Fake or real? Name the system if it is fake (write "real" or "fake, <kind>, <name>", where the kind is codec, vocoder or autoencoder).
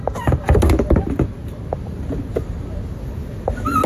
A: real